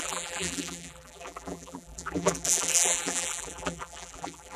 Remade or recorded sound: remade